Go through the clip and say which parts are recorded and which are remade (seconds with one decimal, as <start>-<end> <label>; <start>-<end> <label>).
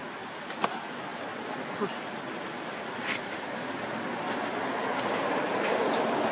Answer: 0.0-6.3 recorded